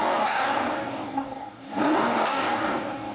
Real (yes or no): no